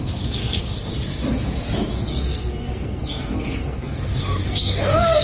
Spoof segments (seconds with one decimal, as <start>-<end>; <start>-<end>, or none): 0.0-0.9; 2.1-5.2